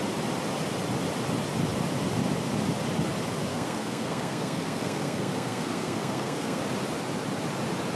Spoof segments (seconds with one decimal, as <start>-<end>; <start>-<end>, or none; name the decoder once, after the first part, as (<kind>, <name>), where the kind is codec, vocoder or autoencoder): 3.5-6.6 (codec, SNAC)